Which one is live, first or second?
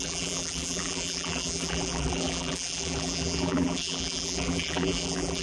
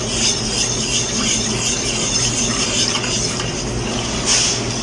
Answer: second